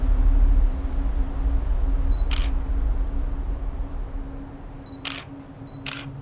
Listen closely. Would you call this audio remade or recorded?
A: recorded